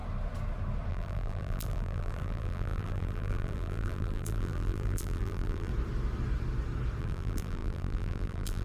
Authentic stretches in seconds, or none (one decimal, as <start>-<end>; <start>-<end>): 0.0-0.9; 5.7-7.0